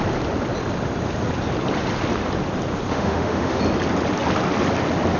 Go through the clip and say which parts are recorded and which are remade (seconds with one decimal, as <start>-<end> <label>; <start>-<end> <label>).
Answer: 0.0-2.9 recorded; 2.9-3.6 remade; 3.6-5.2 recorded